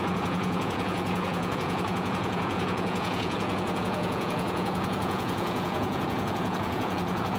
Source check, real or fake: fake